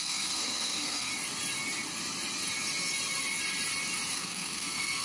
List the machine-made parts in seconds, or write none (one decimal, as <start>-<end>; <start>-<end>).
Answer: 0.0-1.1; 4.1-5.0